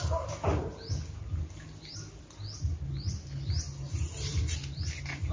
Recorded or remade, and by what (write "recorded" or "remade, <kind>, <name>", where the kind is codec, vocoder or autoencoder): recorded